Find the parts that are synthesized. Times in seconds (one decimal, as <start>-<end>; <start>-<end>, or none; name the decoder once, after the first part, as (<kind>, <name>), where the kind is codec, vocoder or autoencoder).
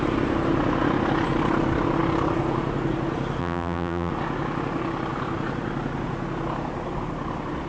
3.4-4.1 (vocoder, BigVGAN v2)